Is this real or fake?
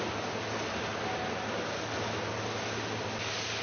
real